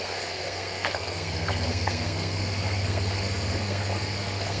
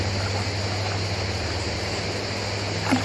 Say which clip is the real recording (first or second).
second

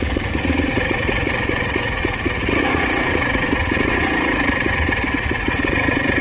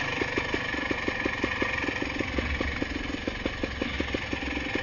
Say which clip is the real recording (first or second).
second